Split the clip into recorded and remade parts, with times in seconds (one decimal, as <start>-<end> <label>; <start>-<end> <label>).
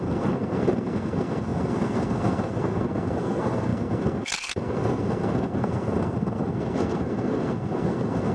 0.0-8.3 remade